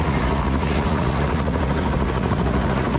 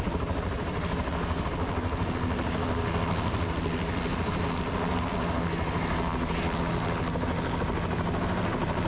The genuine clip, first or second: second